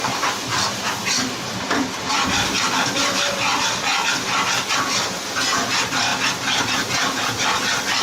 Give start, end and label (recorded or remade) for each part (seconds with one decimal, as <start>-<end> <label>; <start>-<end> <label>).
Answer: 0.0-8.0 recorded